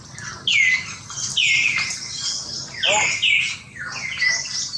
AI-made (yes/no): no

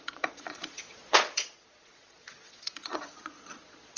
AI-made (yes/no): yes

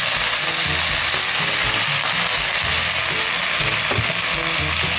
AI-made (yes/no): no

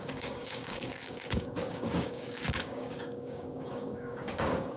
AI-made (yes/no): yes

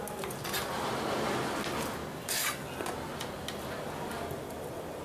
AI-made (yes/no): no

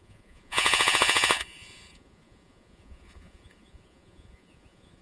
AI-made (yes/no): yes